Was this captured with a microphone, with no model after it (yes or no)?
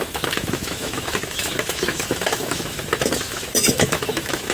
no